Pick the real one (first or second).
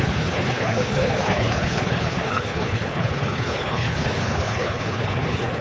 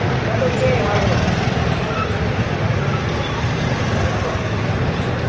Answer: second